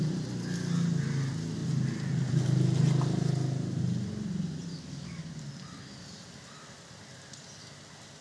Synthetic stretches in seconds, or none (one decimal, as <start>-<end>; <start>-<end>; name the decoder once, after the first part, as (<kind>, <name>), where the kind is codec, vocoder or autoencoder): 4.7-5.4 (codec, DAC)